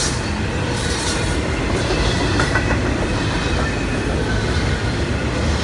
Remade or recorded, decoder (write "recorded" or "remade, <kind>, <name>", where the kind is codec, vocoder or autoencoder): recorded